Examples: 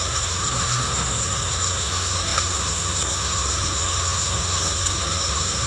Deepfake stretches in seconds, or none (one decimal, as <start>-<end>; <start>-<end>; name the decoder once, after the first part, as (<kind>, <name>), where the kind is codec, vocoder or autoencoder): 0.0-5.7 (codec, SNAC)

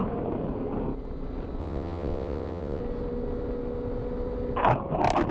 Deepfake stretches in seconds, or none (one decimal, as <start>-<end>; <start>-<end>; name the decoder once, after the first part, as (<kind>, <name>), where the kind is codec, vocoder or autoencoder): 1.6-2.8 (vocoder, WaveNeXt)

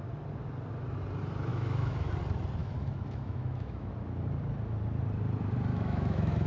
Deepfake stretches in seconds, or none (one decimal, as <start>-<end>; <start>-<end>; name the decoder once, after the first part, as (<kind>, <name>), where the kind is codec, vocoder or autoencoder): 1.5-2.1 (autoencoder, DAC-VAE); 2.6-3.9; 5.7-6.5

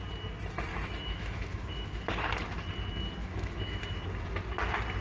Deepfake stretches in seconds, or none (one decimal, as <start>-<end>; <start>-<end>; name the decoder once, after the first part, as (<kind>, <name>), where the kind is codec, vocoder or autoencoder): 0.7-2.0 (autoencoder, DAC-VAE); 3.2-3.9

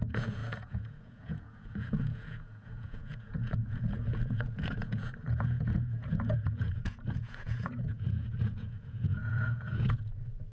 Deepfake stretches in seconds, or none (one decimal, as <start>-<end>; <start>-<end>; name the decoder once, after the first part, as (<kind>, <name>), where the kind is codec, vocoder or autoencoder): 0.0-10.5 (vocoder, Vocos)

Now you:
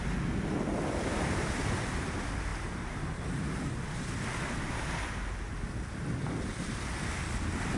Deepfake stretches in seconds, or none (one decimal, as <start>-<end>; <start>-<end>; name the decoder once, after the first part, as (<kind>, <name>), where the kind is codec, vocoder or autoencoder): none

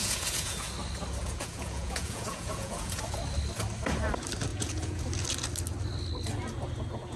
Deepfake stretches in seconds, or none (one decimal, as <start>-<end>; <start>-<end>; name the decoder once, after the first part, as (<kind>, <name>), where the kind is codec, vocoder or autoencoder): 0.0-0.7 (vocoder, Vocos); 1.2-3.0; 4.5-5.0

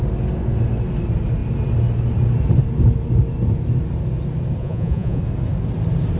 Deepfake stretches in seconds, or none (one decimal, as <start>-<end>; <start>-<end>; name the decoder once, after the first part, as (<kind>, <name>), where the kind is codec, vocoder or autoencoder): 4.6-5.2 (vocoder, Vocos)